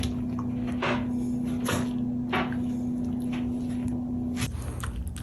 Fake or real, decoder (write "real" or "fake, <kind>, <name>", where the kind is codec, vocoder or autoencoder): real